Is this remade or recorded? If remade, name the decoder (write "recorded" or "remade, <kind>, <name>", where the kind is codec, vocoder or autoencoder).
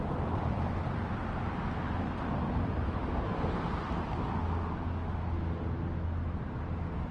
recorded